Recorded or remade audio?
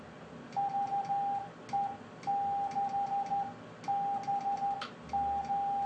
recorded